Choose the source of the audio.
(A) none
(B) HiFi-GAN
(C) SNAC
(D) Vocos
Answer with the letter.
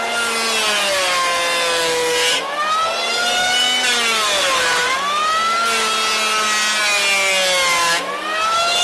A